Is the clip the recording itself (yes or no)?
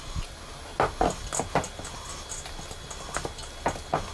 yes